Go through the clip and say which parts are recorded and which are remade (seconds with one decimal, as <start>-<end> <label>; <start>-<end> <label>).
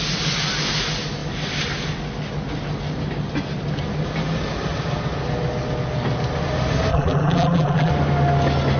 0.0-6.9 recorded; 6.9-7.9 remade; 7.9-8.8 recorded